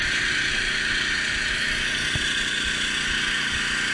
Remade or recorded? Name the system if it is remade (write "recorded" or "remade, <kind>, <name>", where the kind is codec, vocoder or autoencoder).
recorded